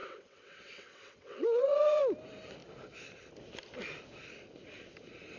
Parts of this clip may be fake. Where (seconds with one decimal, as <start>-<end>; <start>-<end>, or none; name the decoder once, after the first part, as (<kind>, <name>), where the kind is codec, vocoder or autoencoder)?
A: 0.0-2.0 (vocoder, WaveNeXt)